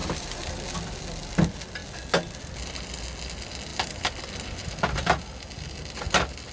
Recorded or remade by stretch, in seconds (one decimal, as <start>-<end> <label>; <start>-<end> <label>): 0.0-1.0 remade; 1.0-3.7 recorded; 3.7-4.7 remade; 4.7-6.5 recorded